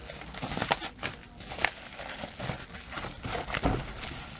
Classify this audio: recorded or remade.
recorded